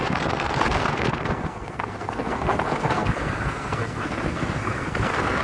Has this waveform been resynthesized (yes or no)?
yes